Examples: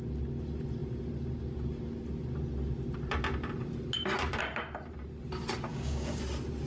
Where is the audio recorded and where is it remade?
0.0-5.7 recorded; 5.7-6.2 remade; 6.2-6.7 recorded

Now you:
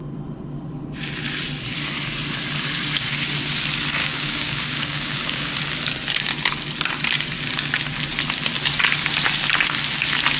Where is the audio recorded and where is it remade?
0.0-4.0 recorded; 4.0-5.5 remade; 5.5-10.4 recorded

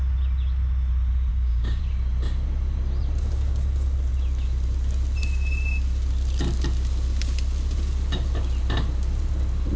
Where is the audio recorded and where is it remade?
0.0-1.3 recorded; 1.3-1.8 remade; 1.8-9.8 recorded

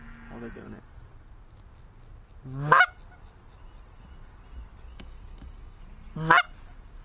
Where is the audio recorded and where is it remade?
0.0-4.9 recorded; 4.9-5.8 remade; 5.8-7.0 recorded